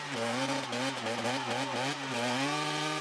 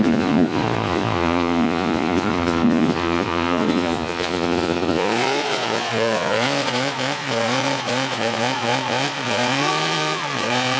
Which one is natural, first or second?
first